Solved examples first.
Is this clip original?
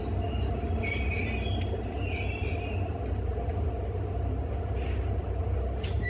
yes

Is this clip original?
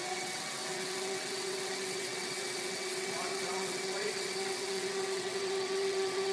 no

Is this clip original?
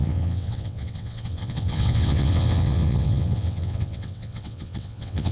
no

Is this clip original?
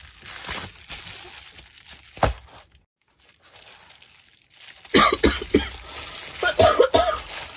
yes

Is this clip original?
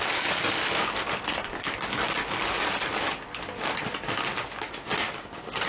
yes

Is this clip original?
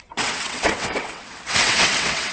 no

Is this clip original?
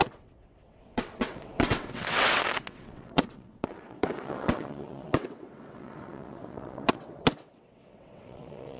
no